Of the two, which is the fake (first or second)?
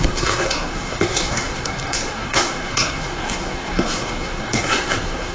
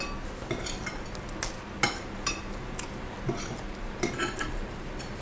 first